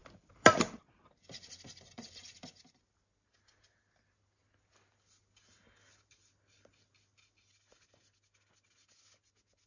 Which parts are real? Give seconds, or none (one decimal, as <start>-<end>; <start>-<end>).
3.0-9.7

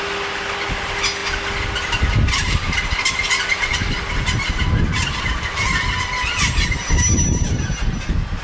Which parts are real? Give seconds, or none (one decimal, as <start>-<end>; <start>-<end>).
0.0-8.4

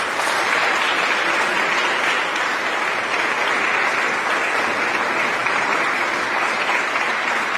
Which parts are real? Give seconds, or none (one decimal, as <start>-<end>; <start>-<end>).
1.0-4.7

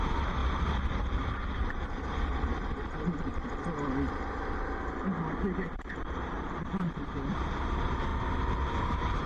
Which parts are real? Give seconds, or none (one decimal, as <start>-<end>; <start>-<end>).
0.4-0.9; 3.3-6.0; 8.1-8.8

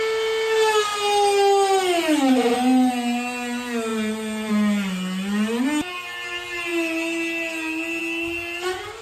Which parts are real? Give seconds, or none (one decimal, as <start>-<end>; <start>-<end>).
0.0-9.0

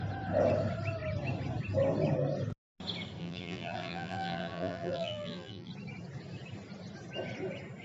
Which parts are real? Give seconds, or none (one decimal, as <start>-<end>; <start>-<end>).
0.0-3.2; 5.7-7.8

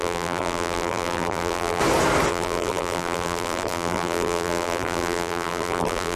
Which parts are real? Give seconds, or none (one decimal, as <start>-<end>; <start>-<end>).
1.8-2.3